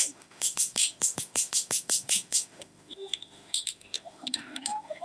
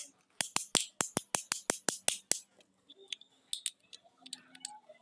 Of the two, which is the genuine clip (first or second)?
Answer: second